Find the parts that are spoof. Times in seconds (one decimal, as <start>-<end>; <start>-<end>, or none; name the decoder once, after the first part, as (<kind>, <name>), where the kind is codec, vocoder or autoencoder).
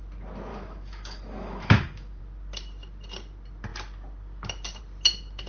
0.5-2.2 (autoencoder, DAC-VAE)